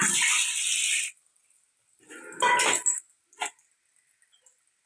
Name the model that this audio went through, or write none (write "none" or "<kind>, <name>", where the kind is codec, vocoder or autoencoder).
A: none